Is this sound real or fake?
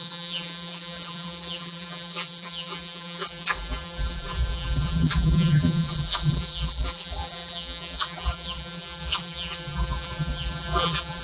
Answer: fake